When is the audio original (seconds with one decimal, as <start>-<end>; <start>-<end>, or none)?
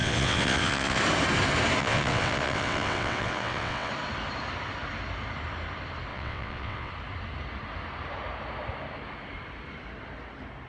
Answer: 1.0-1.8; 3.9-6.1; 6.9-10.7